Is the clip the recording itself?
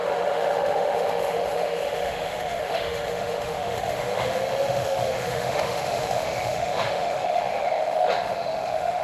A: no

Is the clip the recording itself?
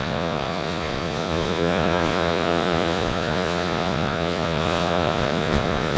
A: no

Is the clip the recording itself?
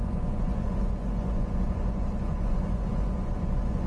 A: no